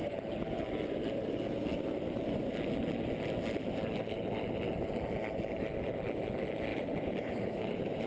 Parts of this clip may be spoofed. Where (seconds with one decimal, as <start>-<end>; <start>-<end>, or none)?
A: 6.7-8.1